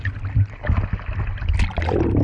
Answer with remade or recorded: recorded